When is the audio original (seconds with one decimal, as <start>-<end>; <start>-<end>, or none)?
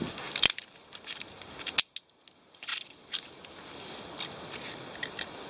0.0-5.5